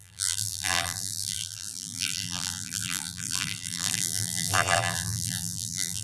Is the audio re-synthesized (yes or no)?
yes